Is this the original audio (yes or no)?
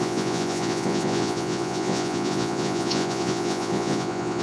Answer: no